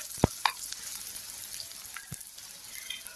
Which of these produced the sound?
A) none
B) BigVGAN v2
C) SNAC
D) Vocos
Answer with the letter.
A